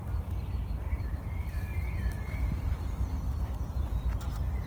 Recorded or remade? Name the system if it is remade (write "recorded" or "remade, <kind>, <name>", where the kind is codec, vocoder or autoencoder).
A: recorded